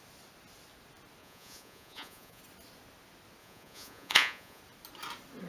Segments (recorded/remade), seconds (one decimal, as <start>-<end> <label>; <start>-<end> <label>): 0.0-1.2 recorded; 1.2-2.4 remade; 2.4-3.4 recorded; 3.4-4.6 remade; 4.6-5.5 recorded